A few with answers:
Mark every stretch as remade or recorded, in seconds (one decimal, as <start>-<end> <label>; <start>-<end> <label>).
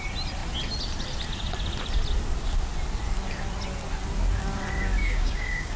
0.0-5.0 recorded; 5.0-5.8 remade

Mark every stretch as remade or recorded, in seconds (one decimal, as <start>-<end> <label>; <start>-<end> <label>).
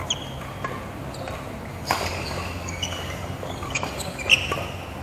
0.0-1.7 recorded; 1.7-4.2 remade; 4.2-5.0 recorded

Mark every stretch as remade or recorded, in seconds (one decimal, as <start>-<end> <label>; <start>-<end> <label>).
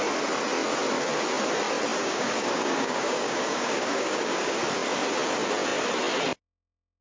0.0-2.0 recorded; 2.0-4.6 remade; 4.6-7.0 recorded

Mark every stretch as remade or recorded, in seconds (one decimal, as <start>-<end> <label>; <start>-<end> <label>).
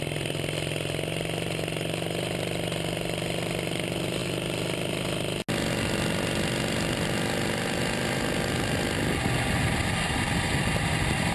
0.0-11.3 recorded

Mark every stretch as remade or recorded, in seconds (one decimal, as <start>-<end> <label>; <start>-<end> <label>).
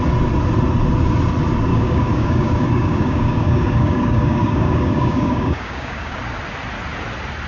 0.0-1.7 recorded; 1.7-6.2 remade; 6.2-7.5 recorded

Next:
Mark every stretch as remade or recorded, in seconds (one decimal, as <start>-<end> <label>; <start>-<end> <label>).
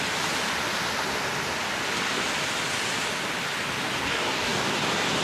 0.0-4.0 recorded; 4.0-4.7 remade; 4.7-5.2 recorded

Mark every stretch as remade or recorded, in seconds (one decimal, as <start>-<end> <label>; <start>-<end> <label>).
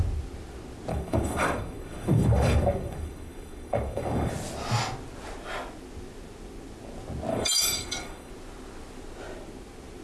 0.0-0.9 recorded; 0.9-4.3 remade; 4.3-7.3 recorded; 7.3-8.3 remade; 8.3-10.0 recorded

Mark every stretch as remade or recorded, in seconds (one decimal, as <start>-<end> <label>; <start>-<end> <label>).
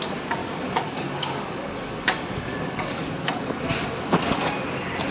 0.0-0.4 recorded; 0.4-3.0 remade; 3.0-5.1 recorded